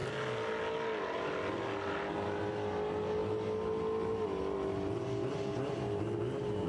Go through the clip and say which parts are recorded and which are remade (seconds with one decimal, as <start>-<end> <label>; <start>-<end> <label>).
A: 0.0-6.7 recorded